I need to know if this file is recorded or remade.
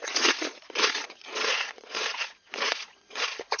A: remade